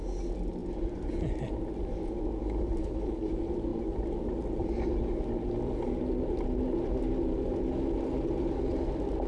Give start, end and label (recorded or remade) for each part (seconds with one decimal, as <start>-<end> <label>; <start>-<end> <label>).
0.0-2.8 recorded; 2.8-3.3 remade; 3.3-9.3 recorded